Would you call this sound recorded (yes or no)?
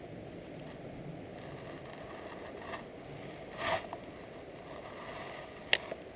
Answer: yes